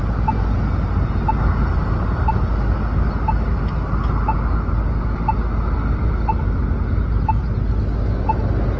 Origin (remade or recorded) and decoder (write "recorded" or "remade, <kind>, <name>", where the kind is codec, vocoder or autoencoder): recorded